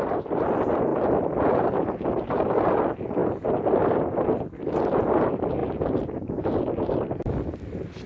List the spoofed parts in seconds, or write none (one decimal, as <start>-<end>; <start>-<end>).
none